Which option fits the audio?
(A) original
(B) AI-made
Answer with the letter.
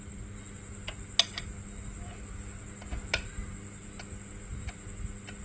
A